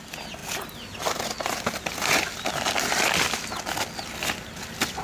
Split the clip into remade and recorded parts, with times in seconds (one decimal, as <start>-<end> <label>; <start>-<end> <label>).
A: 0.0-5.0 recorded

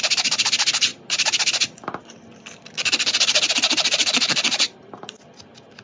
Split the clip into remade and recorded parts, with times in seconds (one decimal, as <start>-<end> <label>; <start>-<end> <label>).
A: 0.0-5.8 recorded

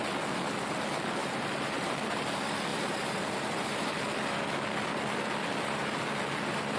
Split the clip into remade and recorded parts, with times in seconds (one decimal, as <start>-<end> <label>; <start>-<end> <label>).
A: 0.0-1.2 recorded; 1.2-2.2 remade; 2.2-2.7 recorded; 2.7-4.0 remade; 4.0-6.8 recorded

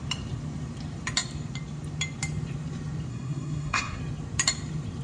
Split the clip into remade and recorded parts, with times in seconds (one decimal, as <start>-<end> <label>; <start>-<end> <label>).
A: 0.0-3.1 recorded; 3.1-4.0 remade; 4.0-5.0 recorded

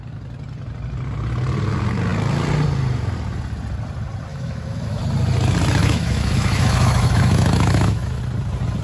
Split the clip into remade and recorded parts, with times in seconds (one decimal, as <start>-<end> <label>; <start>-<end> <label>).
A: 0.0-4.3 recorded; 4.3-5.0 remade; 5.0-5.8 recorded; 5.8-8.2 remade; 8.2-8.8 recorded